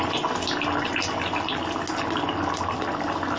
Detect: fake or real real